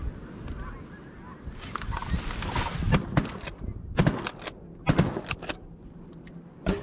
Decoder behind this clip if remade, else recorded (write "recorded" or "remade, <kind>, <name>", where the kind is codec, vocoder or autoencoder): recorded